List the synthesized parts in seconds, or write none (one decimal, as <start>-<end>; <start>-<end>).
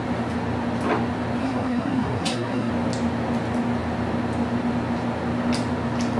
1.4-2.7